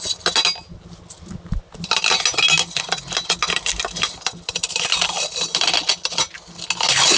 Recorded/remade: recorded